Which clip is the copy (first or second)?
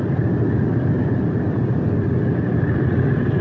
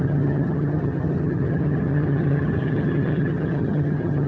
second